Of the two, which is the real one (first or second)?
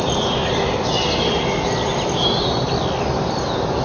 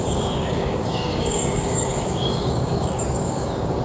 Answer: first